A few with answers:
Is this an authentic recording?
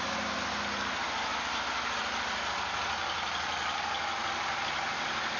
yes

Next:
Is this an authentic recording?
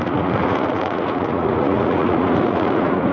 no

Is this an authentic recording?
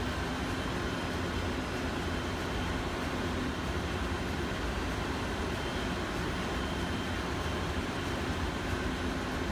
yes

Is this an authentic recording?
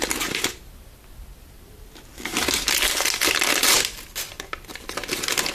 yes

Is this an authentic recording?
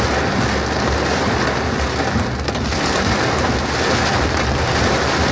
yes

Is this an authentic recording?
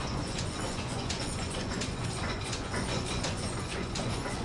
no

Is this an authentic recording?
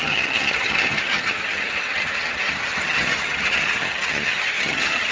no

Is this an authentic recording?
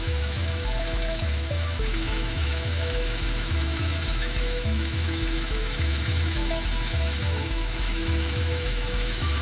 no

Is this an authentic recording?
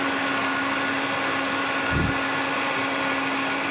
yes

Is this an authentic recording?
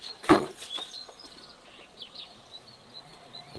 no